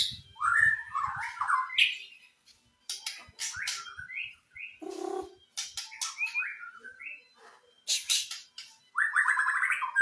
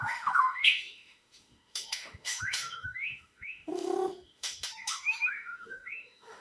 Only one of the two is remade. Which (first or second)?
second